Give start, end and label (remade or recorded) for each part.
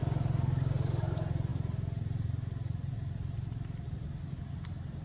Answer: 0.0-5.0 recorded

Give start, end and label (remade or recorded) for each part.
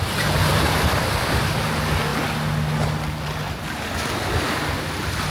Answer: 0.0-0.4 recorded; 0.4-1.7 remade; 1.7-5.3 recorded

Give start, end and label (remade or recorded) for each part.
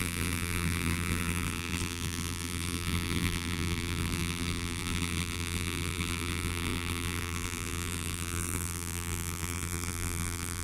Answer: 0.0-10.6 remade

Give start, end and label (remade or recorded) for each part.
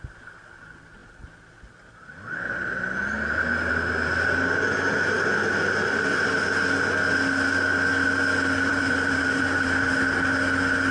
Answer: 0.0-8.7 recorded; 8.7-9.9 remade; 9.9-10.9 recorded